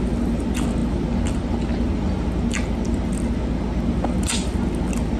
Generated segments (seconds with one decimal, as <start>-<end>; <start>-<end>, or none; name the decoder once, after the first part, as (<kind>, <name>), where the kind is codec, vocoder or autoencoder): none

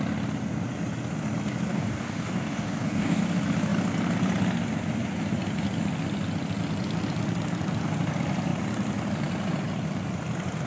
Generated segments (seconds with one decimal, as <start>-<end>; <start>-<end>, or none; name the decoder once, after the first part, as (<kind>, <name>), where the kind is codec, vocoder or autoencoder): 1.7-3.2 (codec, DAC)

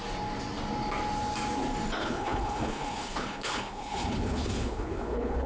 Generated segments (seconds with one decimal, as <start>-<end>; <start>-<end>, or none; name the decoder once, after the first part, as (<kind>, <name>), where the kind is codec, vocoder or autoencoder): 2.0-5.5 (codec, HILCodec)

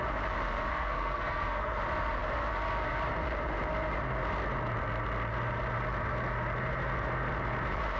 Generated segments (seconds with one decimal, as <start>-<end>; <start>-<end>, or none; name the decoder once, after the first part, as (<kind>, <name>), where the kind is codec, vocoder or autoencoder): 0.7-1.8 (codec, SNAC)

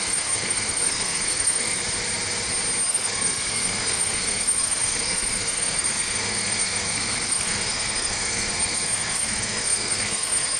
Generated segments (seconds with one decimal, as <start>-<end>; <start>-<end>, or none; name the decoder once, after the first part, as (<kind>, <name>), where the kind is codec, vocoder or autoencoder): 0.0-1.8 (codec, SNAC); 2.9-10.6

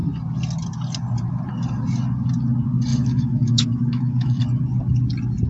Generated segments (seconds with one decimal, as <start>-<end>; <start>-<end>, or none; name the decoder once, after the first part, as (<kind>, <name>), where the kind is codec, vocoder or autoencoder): 2.9-4.4 (autoencoder, DAC-VAE)

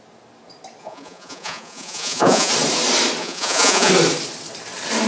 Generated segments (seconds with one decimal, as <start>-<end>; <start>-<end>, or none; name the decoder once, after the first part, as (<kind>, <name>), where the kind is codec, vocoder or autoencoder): 0.8-2.5 (vocoder, Vocos); 3.2-3.9

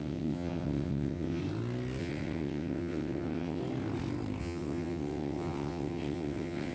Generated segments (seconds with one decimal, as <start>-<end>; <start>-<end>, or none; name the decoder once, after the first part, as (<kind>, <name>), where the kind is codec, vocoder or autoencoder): 0.0-1.4 (vocoder, WaveNeXt); 2.0-3.6; 4.4-6.7